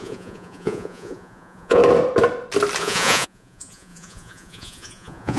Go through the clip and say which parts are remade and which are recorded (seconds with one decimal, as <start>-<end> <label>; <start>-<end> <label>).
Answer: 0.0-1.8 remade; 1.8-2.8 recorded; 2.8-5.4 remade